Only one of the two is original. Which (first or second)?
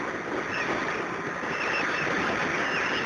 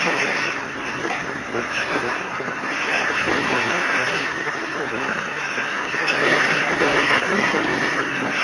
first